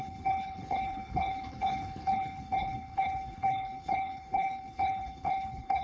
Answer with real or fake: fake